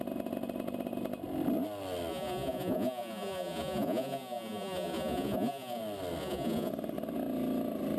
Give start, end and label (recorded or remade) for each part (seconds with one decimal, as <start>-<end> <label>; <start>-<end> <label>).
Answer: 0.0-2.1 recorded; 2.1-5.8 remade; 5.8-6.2 recorded; 6.2-6.7 remade; 6.7-8.0 recorded